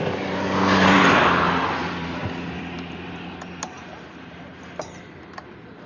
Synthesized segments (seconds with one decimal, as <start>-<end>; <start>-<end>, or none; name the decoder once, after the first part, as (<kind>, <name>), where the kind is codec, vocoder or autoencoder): 0.0-5.9 (vocoder, BigVGAN v2)